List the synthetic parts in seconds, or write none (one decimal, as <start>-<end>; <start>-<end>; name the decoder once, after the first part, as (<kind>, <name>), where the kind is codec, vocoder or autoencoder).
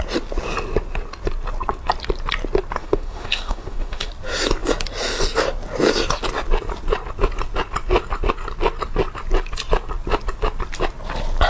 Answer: 2.8-4.1 (autoencoder, DAC-VAE)